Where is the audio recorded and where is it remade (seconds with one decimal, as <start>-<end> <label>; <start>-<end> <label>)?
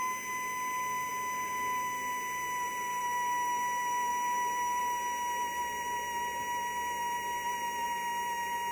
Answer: 0.0-8.7 recorded